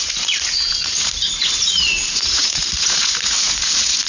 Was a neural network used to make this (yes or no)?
yes